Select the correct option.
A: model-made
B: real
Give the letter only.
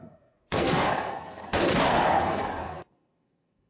A